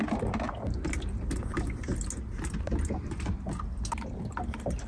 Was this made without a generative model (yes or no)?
yes